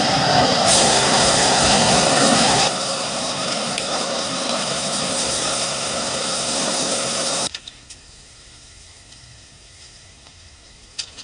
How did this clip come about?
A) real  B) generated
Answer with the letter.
B